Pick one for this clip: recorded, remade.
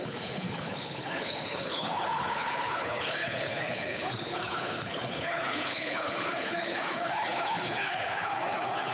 remade